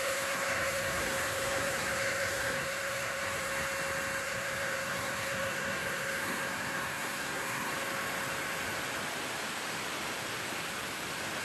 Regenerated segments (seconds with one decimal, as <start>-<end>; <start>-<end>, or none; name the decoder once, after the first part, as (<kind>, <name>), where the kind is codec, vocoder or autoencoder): 0.0-3.5 (codec, SNAC); 4.2-7.7